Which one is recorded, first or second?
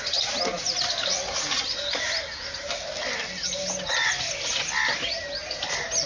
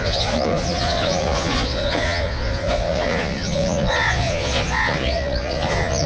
first